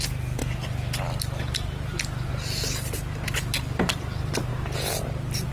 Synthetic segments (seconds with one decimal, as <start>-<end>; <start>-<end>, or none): none